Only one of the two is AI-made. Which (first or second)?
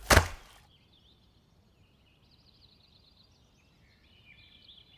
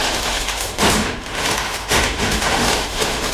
second